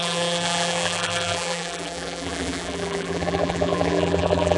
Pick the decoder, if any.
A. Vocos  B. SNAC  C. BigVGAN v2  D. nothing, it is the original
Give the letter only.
C